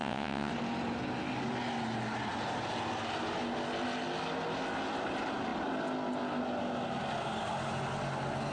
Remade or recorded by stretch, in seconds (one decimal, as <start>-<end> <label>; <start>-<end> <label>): 0.0-0.5 remade; 0.5-8.5 recorded